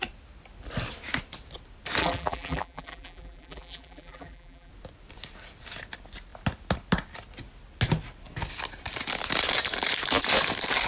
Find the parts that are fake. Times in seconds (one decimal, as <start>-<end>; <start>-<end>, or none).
2.0-4.7